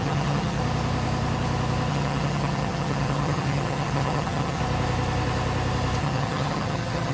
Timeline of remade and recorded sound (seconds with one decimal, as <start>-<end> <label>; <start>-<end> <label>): 0.0-0.6 remade; 0.6-1.9 recorded; 1.9-4.6 remade; 4.6-6.0 recorded; 6.0-7.1 remade